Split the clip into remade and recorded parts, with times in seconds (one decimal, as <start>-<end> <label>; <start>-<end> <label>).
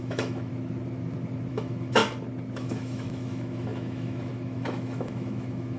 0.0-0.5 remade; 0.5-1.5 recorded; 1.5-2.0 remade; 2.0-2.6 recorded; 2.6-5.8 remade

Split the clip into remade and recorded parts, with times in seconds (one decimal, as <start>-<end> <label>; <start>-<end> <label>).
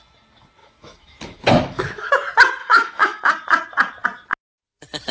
0.0-0.6 recorded; 0.6-2.1 remade; 2.1-2.6 recorded; 2.6-3.3 remade; 3.3-5.1 recorded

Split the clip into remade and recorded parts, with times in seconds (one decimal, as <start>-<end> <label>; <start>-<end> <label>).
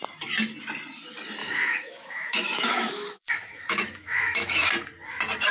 0.0-1.4 recorded; 1.4-4.7 remade; 4.7-5.5 recorded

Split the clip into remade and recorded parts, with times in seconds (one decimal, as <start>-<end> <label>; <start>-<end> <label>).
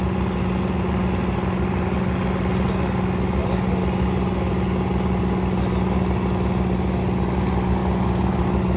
0.0-8.8 recorded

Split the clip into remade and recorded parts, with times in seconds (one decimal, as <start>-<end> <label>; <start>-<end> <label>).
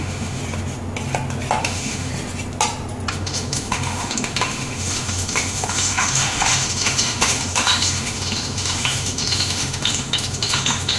0.0-0.4 remade; 0.4-1.6 recorded; 1.6-2.1 remade; 2.1-3.1 recorded; 3.1-11.0 remade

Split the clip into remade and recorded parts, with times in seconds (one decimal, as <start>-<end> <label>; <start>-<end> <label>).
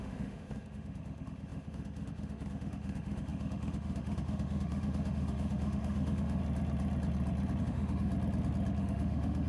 0.0-6.4 remade; 6.4-7.6 recorded; 7.6-8.1 remade; 8.1-8.8 recorded; 8.8-9.5 remade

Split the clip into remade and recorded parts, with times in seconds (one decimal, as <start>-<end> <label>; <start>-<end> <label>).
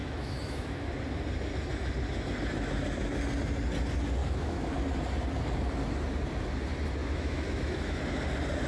0.0-0.9 remade; 0.9-4.2 recorded; 4.2-4.7 remade; 4.7-7.0 recorded; 7.0-8.0 remade; 8.0-8.7 recorded